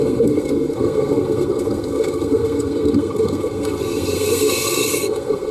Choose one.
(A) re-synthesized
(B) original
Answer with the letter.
A